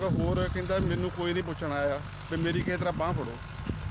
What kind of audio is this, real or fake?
real